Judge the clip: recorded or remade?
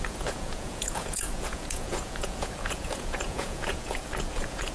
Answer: remade